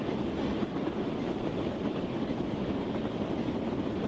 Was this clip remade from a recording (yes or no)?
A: no